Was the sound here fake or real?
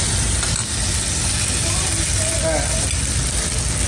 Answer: real